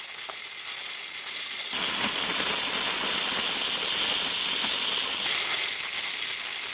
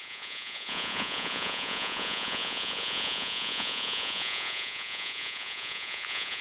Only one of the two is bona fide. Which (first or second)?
first